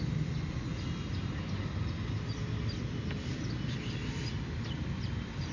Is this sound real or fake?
real